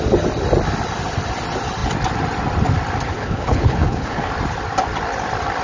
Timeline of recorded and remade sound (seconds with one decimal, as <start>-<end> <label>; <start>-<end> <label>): 0.0-3.1 recorded; 3.1-4.3 remade; 4.3-5.6 recorded